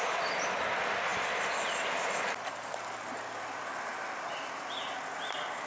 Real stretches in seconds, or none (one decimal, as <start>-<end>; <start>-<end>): 0.0-5.7